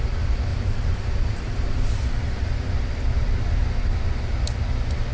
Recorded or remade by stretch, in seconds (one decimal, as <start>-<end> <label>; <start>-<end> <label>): 0.0-0.5 recorded; 0.5-2.7 remade; 2.7-5.1 recorded